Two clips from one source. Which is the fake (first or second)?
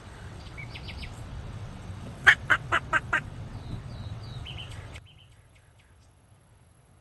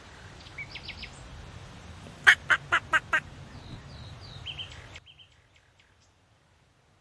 first